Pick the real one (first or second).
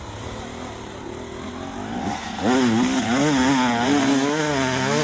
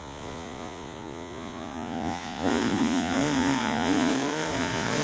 first